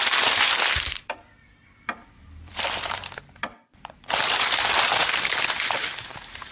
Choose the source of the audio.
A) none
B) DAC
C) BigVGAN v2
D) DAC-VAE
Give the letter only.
C